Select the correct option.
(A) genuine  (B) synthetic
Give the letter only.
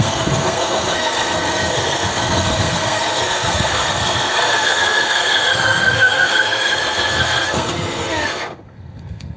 B